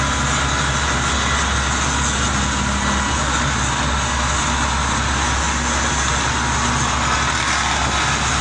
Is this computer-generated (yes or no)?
no